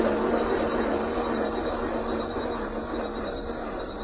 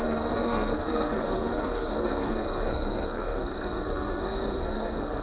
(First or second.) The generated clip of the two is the second